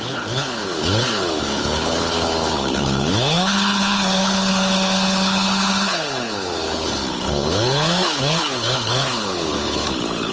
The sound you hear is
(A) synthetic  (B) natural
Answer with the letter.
A